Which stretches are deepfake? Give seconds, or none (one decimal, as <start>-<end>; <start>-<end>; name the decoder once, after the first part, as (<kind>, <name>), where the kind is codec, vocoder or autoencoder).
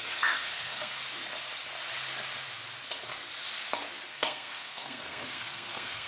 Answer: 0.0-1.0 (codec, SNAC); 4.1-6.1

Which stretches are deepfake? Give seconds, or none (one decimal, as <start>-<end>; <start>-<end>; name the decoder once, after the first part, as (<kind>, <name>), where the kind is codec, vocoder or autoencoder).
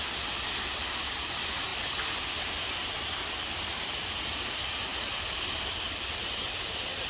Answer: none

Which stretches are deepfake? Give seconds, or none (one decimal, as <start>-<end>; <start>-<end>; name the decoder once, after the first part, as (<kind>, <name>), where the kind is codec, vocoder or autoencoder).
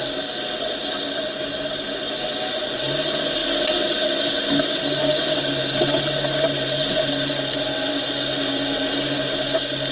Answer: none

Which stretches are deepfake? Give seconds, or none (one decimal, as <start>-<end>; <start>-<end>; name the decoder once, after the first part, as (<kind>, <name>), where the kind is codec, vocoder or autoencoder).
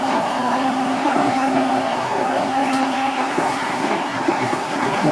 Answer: 0.0-5.1 (codec, SNAC)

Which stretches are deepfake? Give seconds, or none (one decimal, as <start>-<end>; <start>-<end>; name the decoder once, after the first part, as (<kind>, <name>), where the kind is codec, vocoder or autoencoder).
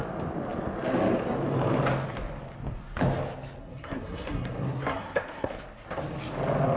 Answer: 3.6-5.5 (codec, SNAC)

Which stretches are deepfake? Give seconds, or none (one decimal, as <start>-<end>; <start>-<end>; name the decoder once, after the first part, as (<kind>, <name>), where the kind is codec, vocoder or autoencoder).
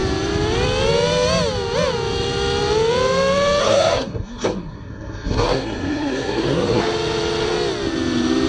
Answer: 3.6-6.8 (codec, SNAC)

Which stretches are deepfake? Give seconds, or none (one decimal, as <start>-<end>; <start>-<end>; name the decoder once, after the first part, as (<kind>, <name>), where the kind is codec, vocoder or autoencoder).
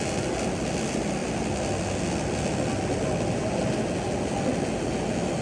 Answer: none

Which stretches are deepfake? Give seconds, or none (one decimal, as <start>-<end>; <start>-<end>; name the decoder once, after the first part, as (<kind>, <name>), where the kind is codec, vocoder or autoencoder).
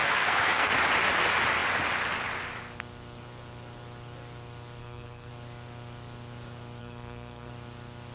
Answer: 0.0-0.7 (codec, SNAC); 4.8-5.3; 6.8-7.5